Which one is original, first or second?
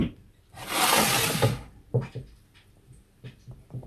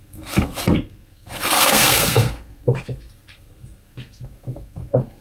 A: first